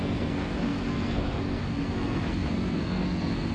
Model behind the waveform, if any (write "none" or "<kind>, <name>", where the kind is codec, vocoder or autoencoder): codec, SNAC